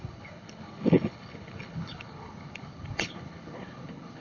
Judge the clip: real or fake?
fake